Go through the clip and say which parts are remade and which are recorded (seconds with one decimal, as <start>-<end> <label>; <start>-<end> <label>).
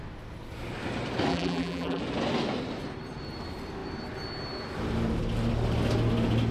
0.0-1.3 recorded; 1.3-2.0 remade; 2.0-6.5 recorded